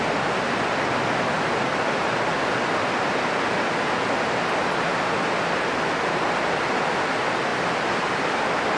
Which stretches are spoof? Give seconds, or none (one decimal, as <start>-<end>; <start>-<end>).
0.0-2.3; 7.1-8.8

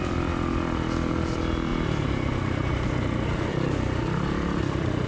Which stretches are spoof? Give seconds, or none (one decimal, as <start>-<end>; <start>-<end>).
0.0-1.7; 3.5-5.1